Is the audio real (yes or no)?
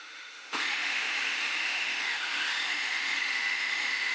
no